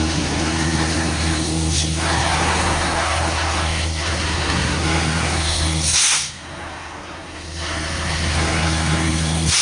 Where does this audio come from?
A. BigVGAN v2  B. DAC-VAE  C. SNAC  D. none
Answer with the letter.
C